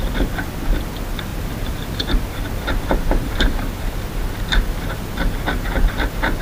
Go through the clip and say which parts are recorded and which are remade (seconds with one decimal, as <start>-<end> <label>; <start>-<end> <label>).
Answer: 0.0-1.3 recorded; 1.3-4.1 remade; 4.1-6.4 recorded